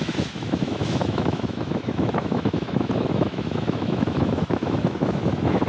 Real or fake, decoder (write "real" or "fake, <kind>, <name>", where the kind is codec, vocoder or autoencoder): fake, autoencoder, DAC-VAE